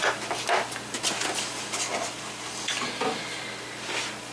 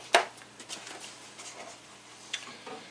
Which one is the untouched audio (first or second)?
first